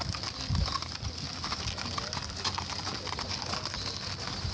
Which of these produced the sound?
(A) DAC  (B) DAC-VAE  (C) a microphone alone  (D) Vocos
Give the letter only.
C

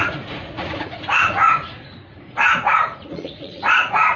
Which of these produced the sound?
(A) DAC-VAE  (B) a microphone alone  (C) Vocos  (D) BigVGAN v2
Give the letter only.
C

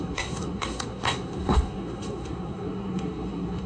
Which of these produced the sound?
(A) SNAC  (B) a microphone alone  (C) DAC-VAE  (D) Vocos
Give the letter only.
A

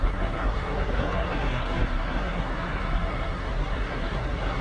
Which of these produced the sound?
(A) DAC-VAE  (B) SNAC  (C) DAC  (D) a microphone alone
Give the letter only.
B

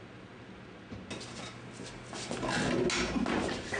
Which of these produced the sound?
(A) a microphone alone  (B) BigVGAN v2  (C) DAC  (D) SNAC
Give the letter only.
A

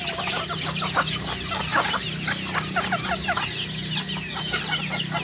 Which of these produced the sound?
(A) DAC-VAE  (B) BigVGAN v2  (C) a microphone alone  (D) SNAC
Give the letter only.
C